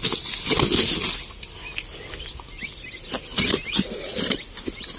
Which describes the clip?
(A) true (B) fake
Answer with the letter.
A